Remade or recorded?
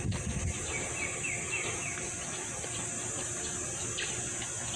recorded